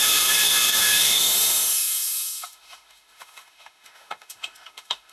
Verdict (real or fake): fake